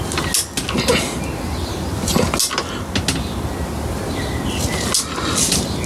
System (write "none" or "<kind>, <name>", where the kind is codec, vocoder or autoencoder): none